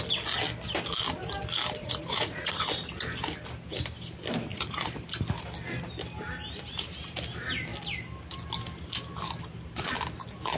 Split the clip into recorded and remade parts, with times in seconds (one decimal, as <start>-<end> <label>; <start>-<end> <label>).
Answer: 0.0-1.8 recorded; 1.8-2.6 remade; 2.6-4.5 recorded; 4.5-5.0 remade; 5.0-10.6 recorded